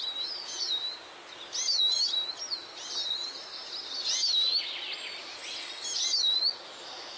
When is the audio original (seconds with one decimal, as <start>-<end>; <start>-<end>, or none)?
0.0-7.2